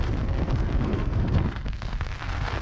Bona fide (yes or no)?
no